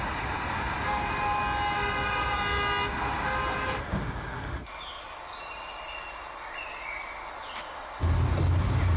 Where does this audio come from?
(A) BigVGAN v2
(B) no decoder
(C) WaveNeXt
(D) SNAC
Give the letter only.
B